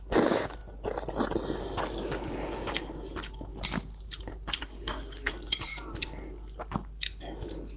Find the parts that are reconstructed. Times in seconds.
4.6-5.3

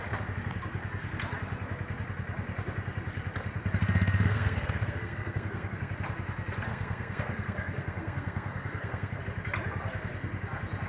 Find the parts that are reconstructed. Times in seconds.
3.8-5.9; 6.7-9.2

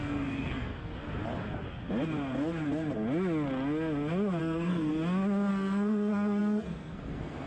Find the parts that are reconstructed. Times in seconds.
0.0-0.9; 4.4-4.9; 5.5-7.5

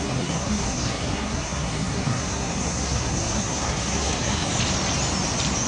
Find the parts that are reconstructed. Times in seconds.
0.0-4.5

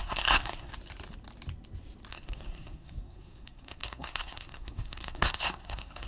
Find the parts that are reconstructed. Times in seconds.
0.0-0.7; 2.1-6.1

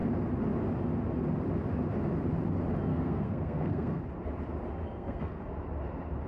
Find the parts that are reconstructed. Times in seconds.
2.9-4.0; 4.8-5.4

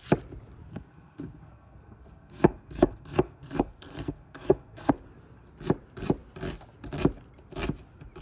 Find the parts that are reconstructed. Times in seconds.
0.7-4.9